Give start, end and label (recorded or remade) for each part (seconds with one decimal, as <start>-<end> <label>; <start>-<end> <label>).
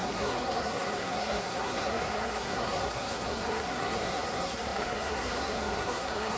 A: 0.0-6.4 remade